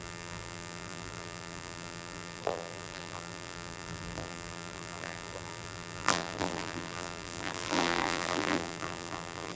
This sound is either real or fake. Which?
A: fake